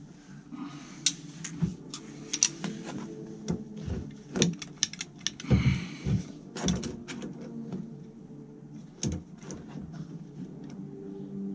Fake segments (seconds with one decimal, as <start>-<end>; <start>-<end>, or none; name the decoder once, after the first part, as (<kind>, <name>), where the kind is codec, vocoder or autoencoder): none